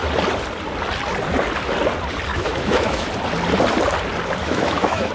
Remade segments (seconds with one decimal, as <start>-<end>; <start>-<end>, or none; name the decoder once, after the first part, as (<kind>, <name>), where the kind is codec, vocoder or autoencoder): 2.3-3.1 (autoencoder, DAC-VAE); 4.4-5.1